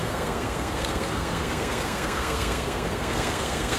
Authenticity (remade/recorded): remade